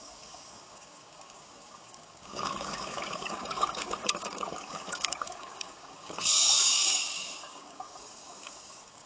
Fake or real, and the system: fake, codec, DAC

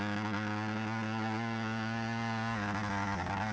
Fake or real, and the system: real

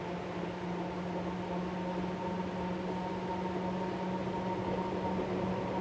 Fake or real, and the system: real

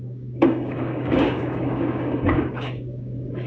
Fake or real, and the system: fake, codec, DAC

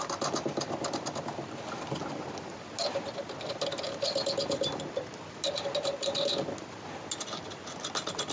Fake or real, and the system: real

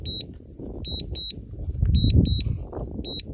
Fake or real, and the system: real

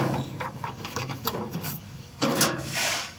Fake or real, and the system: fake, codec, DAC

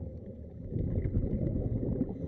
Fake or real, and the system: real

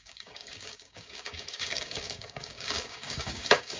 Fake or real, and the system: fake, codec, DAC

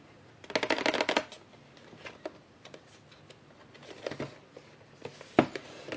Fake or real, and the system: real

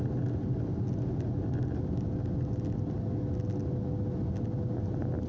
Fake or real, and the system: real